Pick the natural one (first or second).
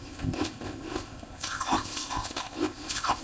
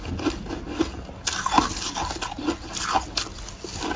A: second